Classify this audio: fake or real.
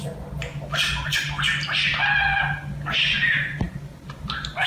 real